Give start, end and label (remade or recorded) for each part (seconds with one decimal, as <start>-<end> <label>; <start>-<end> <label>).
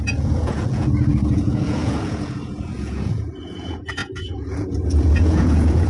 0.0-5.9 remade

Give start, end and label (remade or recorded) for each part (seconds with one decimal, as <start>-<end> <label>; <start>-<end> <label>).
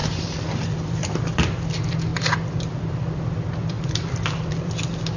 0.0-5.2 remade